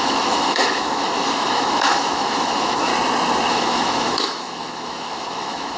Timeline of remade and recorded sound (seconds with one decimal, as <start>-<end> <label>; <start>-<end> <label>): 0.0-2.9 remade; 2.9-3.5 recorded; 3.5-5.8 remade